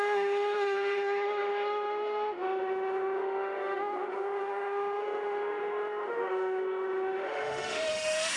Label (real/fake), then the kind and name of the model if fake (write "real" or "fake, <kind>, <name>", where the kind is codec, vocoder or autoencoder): fake, autoencoder, DAC-VAE